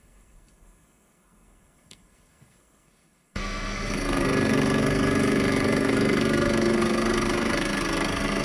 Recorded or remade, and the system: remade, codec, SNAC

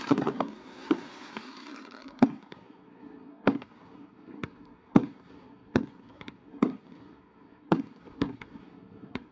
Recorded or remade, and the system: remade, codec, SNAC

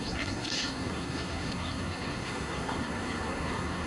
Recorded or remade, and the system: remade, codec, SNAC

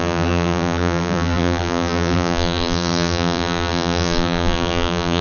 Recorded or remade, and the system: remade, vocoder, BigVGAN v2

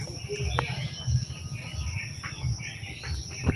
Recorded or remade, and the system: recorded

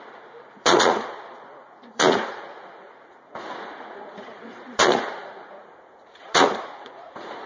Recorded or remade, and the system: remade, vocoder, Vocos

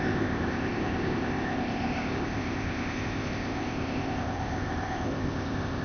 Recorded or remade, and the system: remade, codec, ZipCodec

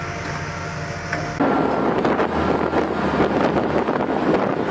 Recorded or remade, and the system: recorded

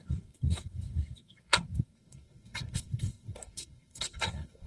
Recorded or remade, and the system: remade, codec, SNAC